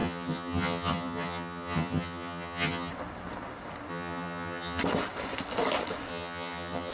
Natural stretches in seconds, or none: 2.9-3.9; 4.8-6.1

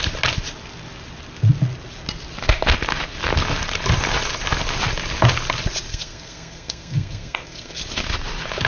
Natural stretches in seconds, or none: 0.0-5.9; 7.8-8.7

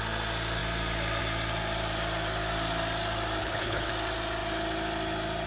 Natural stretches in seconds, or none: 0.0-3.4; 3.9-5.5

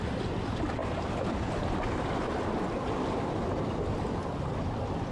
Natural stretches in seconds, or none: 0.0-5.1

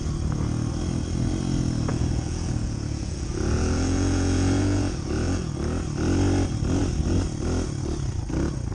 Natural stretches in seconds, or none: 0.0-1.9; 5.5-8.7

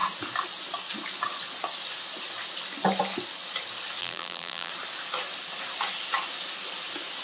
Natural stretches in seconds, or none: 0.0-4.0; 4.7-7.2

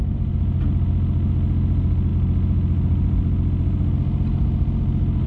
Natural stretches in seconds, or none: 0.0-5.3